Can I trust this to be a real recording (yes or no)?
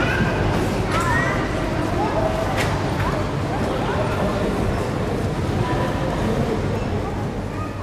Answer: yes